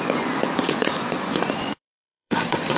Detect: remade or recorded remade